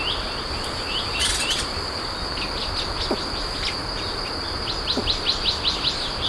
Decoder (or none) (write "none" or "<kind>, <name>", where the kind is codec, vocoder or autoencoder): none